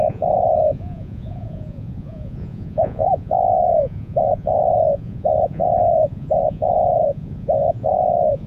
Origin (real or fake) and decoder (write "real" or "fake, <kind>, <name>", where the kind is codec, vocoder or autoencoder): fake, vocoder, Vocos